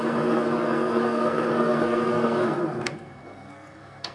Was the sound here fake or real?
fake